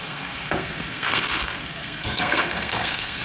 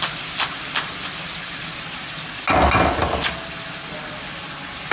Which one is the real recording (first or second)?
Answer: second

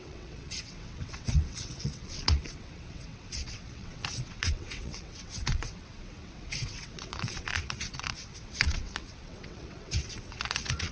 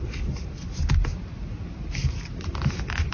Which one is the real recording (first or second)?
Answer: second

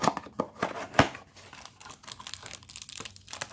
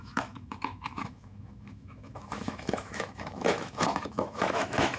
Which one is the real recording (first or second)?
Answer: first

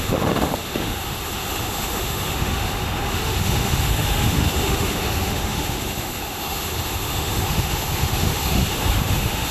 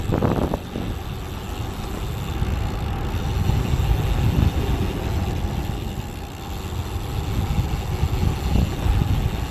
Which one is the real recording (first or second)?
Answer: second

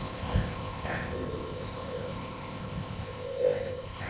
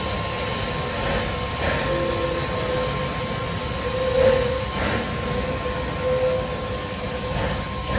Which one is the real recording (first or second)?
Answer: second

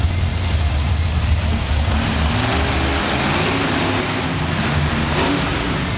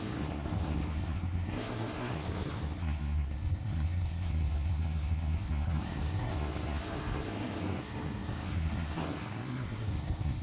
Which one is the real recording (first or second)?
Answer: first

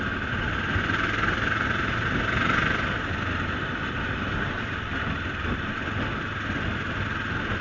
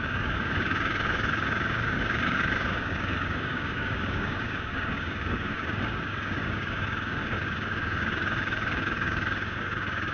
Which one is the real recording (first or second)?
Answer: first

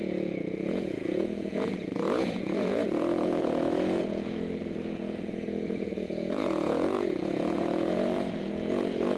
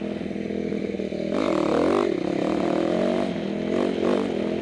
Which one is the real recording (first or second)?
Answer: second